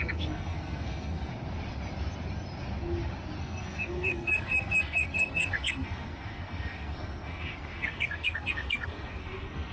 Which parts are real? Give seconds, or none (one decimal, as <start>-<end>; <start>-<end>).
1.3-3.4